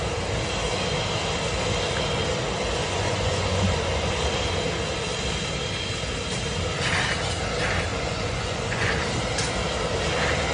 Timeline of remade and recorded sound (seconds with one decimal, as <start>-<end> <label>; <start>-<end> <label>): 0.0-2.8 recorded; 2.8-4.2 remade; 4.2-7.9 recorded; 7.9-8.9 remade; 8.9-10.5 recorded